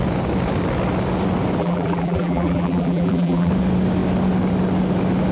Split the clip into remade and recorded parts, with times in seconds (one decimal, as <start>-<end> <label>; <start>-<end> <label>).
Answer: 0.0-1.6 recorded; 1.6-3.5 remade; 3.5-5.3 recorded